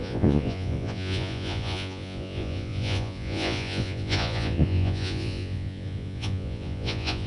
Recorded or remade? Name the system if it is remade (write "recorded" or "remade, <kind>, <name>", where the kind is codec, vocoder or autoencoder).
remade, vocoder, Vocos